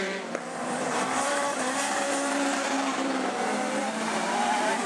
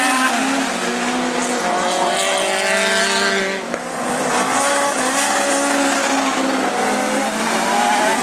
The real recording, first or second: second